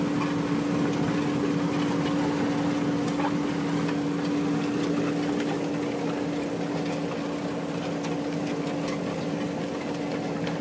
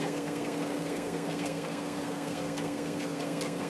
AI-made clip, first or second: second